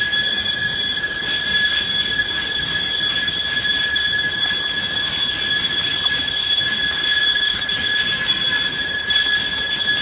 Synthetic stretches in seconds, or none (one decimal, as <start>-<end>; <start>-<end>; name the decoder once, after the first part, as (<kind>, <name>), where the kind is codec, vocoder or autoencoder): 7.3-8.0 (autoencoder, DAC-VAE)